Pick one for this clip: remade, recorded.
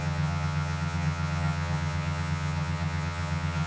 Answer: remade